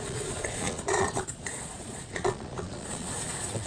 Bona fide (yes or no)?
no